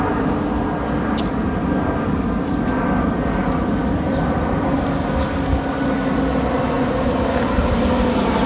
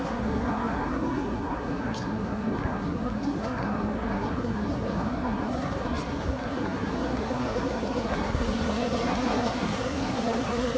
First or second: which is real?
first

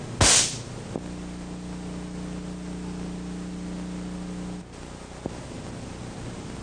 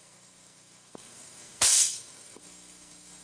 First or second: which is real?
first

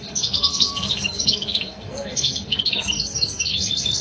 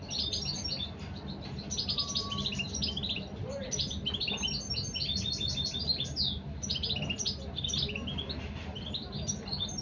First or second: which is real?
second